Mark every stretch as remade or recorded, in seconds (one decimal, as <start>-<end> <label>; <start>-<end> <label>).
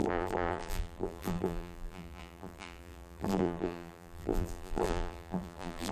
0.0-5.9 remade